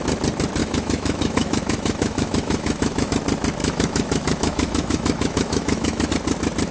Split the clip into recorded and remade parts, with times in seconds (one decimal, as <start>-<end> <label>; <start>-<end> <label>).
0.0-0.6 recorded; 0.6-3.1 remade; 3.1-3.6 recorded; 3.6-6.1 remade; 6.1-6.7 recorded